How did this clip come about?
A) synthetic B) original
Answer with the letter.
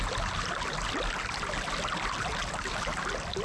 B